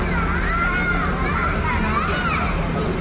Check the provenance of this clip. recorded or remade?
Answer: recorded